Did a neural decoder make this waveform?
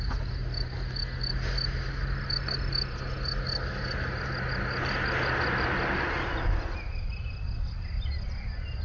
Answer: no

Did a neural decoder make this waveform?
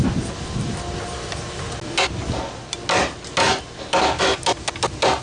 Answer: no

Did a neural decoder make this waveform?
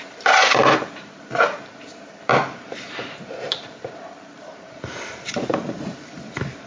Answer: yes